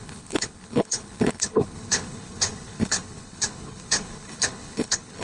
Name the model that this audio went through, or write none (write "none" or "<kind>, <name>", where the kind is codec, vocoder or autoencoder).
codec, HILCodec